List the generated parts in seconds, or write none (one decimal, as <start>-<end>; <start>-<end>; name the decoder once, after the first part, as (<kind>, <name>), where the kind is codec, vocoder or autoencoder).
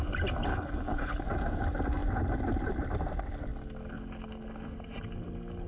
0.5-1.1 (codec, HILCodec)